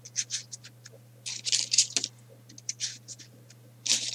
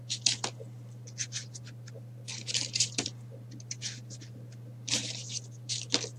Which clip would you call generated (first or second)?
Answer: second